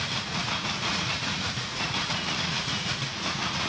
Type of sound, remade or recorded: remade